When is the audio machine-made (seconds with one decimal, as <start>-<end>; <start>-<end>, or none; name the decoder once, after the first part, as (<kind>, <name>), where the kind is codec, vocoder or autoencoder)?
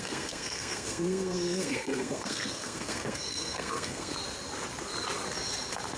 0.0-4.1 (codec, SNAC)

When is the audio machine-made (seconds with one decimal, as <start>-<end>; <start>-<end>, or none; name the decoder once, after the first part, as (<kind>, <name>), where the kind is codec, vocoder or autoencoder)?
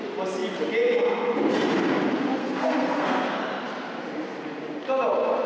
2.4-3.4 (codec, SNAC)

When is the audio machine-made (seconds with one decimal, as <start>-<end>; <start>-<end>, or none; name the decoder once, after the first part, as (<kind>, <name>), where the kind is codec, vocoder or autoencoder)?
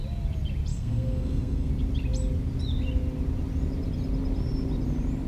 0.7-1.7 (codec, SNAC)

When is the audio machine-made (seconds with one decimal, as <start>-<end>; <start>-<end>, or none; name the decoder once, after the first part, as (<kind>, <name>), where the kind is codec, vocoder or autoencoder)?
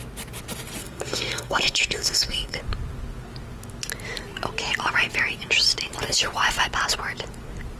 0.8-2.6 (codec, SNAC)